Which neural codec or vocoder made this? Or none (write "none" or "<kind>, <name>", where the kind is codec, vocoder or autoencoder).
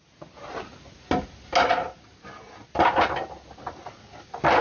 none